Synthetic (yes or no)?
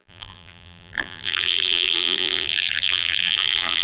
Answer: yes